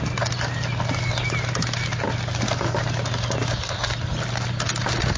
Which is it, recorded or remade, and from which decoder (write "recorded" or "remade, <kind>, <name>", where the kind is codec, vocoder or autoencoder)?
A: recorded